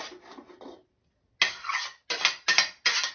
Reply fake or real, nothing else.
real